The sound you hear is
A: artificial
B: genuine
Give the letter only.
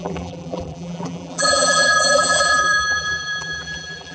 A